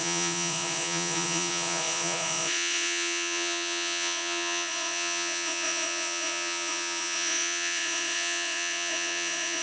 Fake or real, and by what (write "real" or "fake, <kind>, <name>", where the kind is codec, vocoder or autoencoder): fake, vocoder, Vocos